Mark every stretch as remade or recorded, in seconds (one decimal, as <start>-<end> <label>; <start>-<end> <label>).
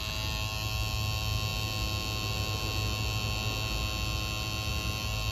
0.0-5.3 recorded